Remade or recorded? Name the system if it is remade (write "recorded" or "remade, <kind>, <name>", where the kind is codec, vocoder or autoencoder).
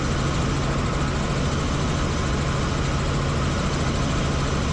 recorded